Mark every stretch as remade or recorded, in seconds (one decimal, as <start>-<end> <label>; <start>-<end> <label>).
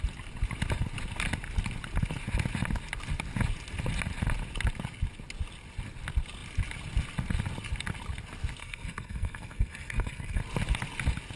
0.0-8.6 recorded; 8.6-10.4 remade; 10.4-11.4 recorded